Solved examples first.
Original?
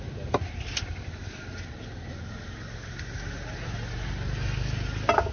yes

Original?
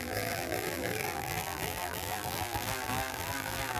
no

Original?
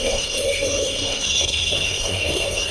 no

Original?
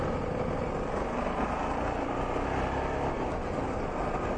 yes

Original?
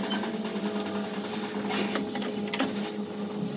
yes